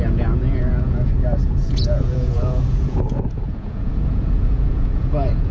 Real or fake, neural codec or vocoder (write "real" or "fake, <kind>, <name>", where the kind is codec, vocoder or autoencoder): fake, vocoder, Vocos